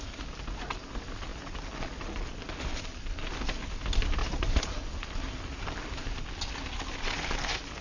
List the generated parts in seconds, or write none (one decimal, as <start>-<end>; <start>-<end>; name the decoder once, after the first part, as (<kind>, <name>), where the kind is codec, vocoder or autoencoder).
4.2-6.1 (vocoder, BigVGAN v2)